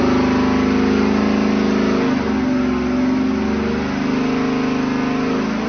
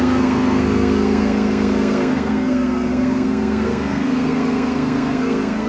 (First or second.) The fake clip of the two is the second